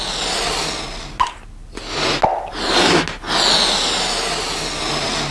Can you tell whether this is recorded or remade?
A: recorded